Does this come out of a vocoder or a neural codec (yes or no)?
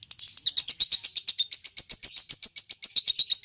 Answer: no